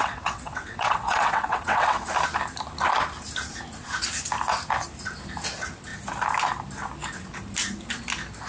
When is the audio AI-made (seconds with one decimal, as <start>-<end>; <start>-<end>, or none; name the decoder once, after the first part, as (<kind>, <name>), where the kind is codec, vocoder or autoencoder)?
0.0-2.1 (vocoder, WaveNeXt)